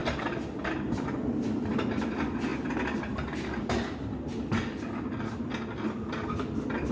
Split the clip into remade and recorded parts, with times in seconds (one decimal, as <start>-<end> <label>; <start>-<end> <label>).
0.0-6.9 recorded